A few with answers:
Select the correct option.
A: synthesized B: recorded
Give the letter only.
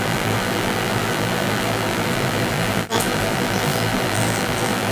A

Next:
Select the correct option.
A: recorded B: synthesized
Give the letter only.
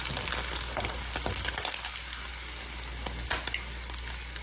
A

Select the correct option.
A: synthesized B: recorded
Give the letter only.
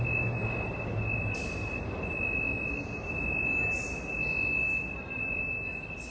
B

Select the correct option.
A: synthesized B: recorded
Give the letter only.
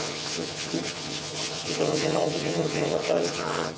A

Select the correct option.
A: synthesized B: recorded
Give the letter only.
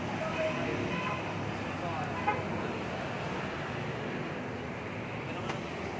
B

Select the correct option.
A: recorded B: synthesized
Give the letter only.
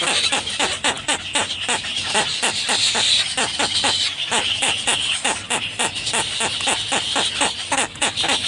A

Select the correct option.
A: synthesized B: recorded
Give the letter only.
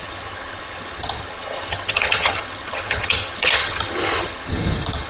A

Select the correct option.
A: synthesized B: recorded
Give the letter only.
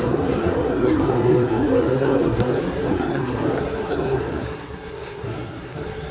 A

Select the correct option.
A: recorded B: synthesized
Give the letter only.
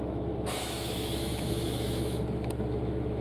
B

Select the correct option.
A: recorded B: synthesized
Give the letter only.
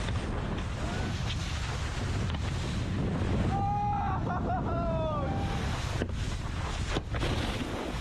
A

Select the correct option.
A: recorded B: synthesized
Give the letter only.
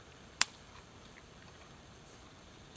B